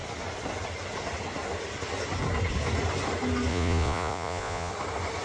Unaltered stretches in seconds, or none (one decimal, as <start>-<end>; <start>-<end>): 0.0-3.5; 4.7-5.2